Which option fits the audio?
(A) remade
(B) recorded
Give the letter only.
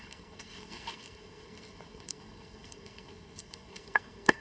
A